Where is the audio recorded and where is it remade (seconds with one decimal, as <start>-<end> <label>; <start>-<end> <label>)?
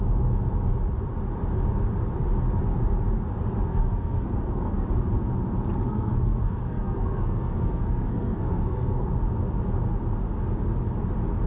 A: 0.0-3.7 recorded; 3.7-4.9 remade; 4.9-5.9 recorded; 5.9-9.1 remade; 9.1-11.5 recorded